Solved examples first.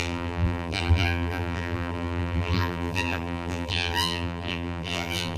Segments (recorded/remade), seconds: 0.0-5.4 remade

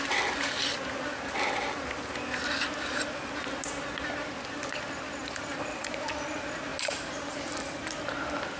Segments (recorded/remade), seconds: 0.0-5.2 recorded; 5.2-6.1 remade; 6.1-8.6 recorded

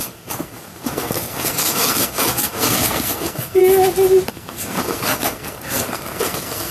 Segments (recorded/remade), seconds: 0.0-3.6 remade; 3.6-4.3 recorded; 4.3-6.7 remade

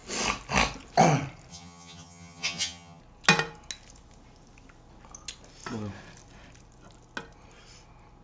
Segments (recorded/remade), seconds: 0.0-1.5 recorded; 1.5-3.0 remade; 3.0-8.2 recorded